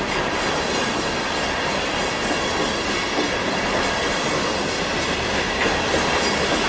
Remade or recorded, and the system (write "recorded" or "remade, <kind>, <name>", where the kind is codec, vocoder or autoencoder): recorded